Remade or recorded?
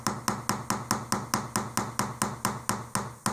recorded